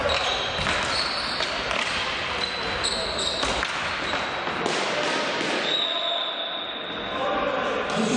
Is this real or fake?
real